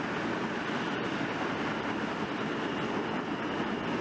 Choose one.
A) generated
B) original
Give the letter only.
B